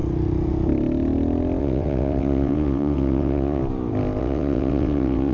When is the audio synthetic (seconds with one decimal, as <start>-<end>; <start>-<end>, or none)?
1.6-3.6; 4.2-5.3